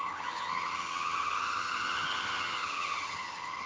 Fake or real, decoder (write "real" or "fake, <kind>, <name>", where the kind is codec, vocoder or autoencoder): fake, vocoder, HiFi-GAN